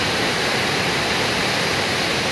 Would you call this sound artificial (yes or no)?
no